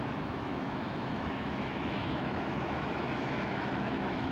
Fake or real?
fake